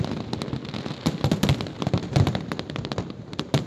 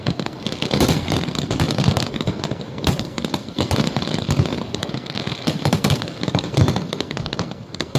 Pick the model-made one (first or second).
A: second